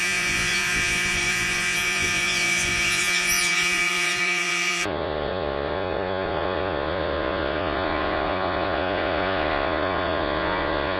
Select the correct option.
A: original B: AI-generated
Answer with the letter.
B